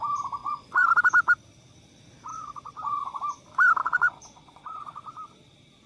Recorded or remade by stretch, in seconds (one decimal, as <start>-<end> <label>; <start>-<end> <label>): 0.0-0.4 recorded; 0.4-0.9 remade; 0.9-2.3 recorded; 2.3-3.2 remade; 3.2-3.8 recorded; 3.8-5.1 remade; 5.1-5.9 recorded